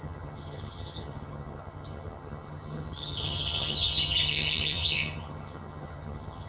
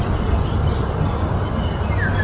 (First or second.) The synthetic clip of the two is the first